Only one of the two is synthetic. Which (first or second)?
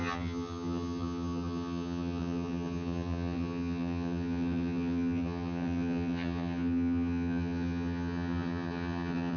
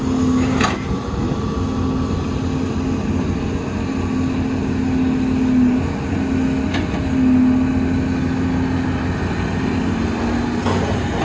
first